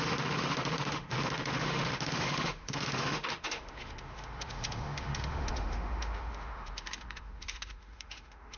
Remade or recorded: remade